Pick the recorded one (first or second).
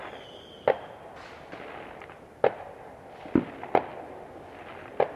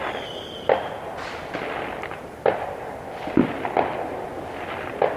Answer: first